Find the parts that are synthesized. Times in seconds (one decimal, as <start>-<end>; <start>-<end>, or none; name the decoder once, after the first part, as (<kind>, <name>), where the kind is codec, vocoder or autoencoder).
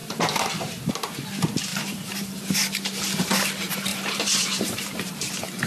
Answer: 0.0-0.9 (vocoder, BigVGAN v2); 1.7-2.4; 3.9-5.3